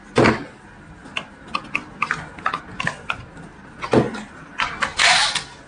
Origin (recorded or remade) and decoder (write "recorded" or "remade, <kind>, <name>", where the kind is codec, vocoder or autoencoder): recorded